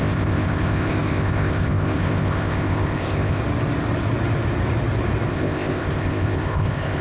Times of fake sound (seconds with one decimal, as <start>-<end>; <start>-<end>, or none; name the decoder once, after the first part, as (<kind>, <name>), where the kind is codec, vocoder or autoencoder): 0.0-3.4 (codec, ZipCodec); 5.3-7.0